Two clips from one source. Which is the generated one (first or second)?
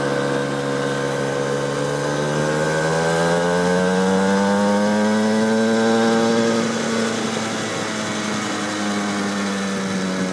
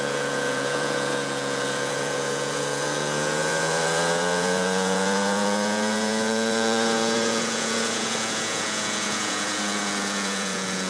second